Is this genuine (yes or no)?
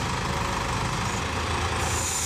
yes